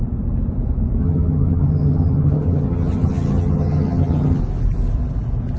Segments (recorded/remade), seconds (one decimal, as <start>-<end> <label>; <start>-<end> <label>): 0.0-1.0 recorded; 1.0-4.4 remade; 4.4-5.6 recorded